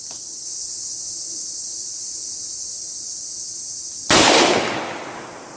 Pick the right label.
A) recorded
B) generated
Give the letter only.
A